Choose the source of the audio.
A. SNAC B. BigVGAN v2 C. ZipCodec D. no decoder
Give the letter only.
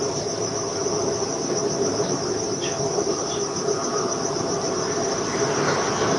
B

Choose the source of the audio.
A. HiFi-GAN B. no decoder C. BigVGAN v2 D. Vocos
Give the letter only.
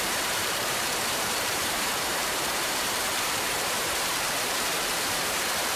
C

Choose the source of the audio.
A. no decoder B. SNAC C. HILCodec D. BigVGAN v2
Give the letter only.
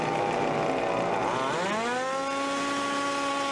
A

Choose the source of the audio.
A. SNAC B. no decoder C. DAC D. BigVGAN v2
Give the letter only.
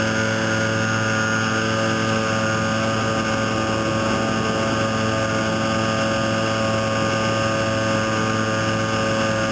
B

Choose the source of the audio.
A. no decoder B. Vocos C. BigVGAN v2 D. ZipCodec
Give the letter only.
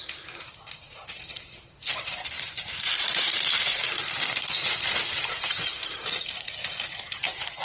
C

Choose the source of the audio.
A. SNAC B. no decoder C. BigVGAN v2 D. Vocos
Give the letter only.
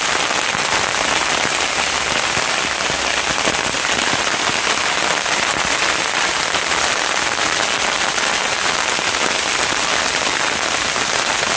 B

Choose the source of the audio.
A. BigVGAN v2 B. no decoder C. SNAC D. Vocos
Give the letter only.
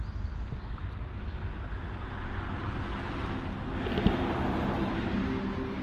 B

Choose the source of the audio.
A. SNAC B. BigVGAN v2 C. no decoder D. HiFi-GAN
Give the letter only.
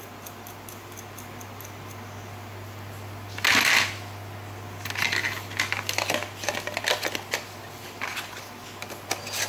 C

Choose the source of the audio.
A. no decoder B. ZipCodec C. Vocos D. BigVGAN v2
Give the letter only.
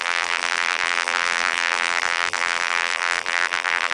D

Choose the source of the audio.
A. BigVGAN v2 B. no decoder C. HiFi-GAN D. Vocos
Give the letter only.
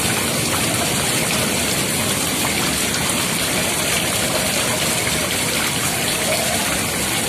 A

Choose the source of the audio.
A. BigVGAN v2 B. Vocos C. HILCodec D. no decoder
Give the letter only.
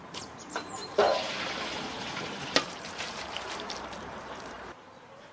A